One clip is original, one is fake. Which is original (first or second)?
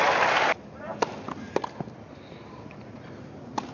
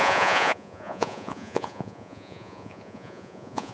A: first